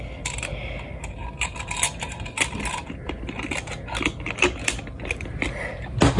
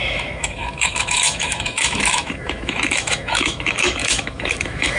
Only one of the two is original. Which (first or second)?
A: first